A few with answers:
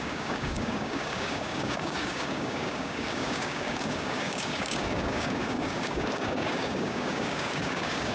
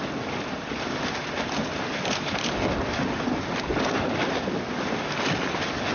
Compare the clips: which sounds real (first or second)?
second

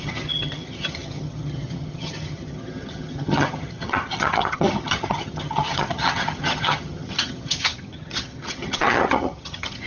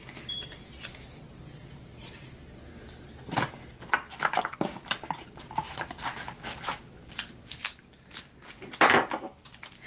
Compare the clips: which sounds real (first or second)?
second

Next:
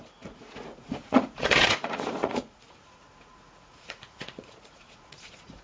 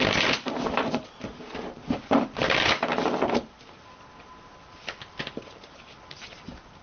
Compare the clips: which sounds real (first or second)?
second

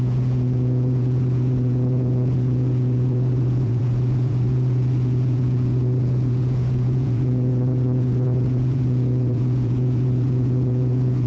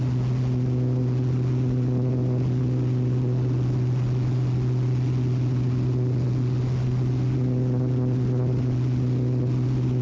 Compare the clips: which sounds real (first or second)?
second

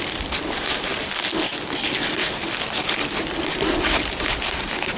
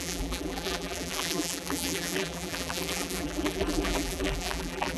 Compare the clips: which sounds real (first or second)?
first